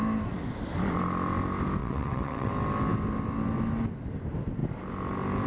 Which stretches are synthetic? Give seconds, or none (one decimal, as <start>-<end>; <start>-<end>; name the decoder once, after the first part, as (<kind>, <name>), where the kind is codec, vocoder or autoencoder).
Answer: 1.8-2.5 (vocoder, WaveNeXt)